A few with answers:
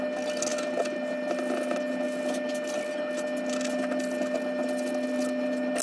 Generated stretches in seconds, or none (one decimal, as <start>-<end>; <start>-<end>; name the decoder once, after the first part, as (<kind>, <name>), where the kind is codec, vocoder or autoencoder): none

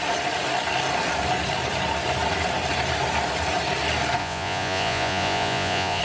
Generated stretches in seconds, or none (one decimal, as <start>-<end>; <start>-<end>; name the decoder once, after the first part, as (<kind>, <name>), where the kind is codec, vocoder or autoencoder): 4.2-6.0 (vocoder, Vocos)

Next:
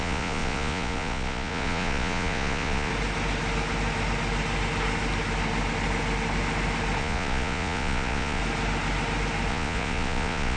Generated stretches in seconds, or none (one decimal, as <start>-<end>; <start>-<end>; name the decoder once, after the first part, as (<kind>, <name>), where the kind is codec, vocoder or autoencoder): 0.0-2.9 (vocoder, Vocos); 7.0-8.4; 9.5-10.6

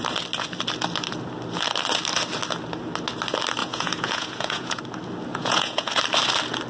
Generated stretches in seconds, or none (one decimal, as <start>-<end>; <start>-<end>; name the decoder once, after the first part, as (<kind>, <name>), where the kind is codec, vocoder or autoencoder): 3.6-4.8 (vocoder, Vocos); 5.3-6.0

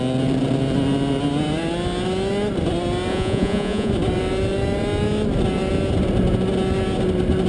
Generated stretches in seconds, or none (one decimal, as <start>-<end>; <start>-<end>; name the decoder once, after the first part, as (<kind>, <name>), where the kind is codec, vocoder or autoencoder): 3.1-3.9 (vocoder, Vocos)

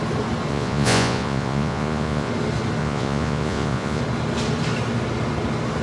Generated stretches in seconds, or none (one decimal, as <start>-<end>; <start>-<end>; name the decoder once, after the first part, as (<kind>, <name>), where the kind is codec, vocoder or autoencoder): 0.5-2.3 (vocoder, Vocos); 2.8-4.0